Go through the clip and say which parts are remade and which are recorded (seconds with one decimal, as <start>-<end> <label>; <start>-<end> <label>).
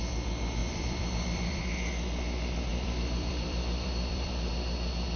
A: 0.0-0.6 recorded; 0.6-1.6 remade; 1.6-2.7 recorded; 2.7-4.5 remade; 4.5-5.2 recorded